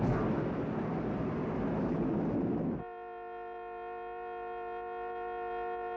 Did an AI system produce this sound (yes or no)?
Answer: no